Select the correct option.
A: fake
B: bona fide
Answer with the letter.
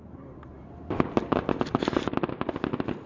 B